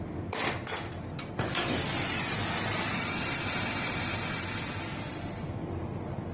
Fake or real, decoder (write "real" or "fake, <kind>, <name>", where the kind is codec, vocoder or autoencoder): real